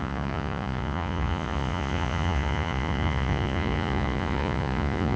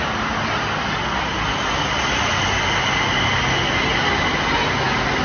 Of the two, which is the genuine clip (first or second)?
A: second